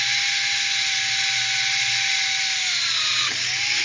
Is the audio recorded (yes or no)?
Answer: yes